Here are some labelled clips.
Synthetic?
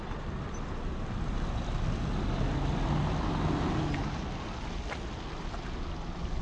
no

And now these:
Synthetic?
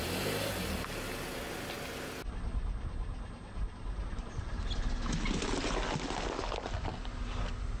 no